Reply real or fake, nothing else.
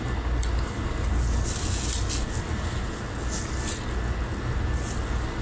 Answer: real